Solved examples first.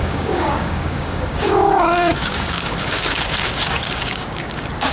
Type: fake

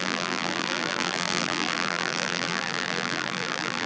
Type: fake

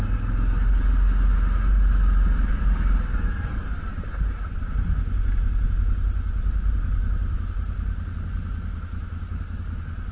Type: real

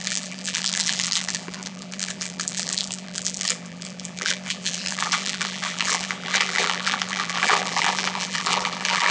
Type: fake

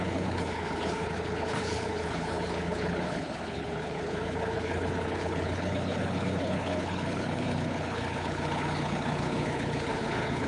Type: fake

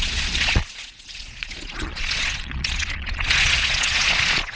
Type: fake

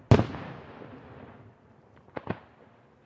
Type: real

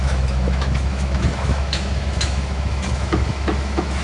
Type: fake